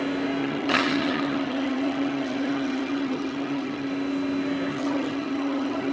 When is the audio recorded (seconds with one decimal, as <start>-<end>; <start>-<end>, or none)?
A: 0.0-0.4; 3.9-4.7